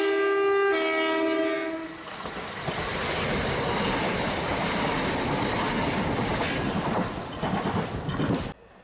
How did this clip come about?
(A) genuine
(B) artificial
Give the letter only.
A